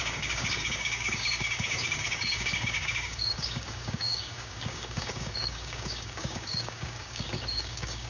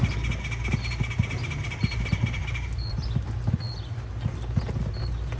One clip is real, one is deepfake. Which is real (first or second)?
second